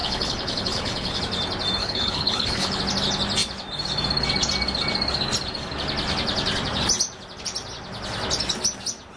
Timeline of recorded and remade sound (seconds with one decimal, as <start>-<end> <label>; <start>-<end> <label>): 0.0-1.2 remade; 1.2-1.8 recorded; 1.8-2.8 remade; 2.8-9.2 recorded